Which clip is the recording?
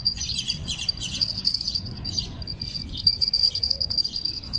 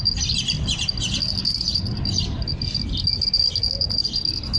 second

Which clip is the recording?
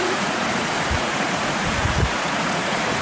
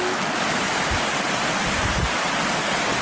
second